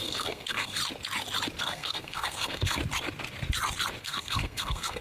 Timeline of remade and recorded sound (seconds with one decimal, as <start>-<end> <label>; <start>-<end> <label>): 0.0-0.8 remade; 0.8-1.6 recorded; 1.6-2.8 remade; 2.8-4.0 recorded; 4.0-5.0 remade